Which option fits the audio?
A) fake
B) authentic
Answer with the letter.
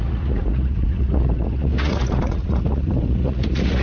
A